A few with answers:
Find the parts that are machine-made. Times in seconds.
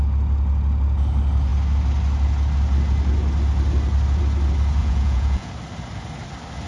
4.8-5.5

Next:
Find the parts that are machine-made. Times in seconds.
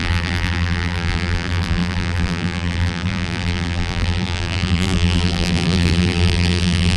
0.0-7.0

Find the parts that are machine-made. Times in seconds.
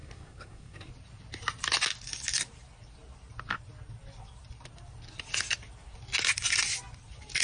0.0-0.9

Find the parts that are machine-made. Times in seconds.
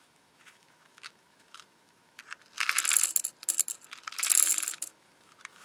0.0-2.2; 4.7-5.6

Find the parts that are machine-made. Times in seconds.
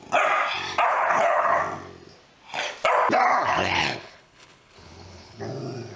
0.9-1.6; 3.3-5.4